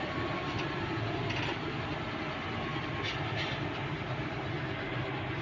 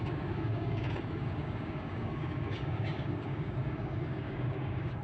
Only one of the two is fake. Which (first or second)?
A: second